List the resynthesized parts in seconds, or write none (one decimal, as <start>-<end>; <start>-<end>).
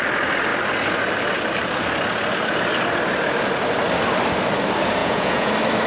5.0-5.5